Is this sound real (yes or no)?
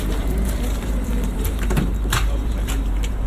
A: no